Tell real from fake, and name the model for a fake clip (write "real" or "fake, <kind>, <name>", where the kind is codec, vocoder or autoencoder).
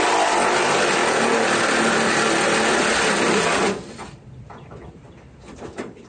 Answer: real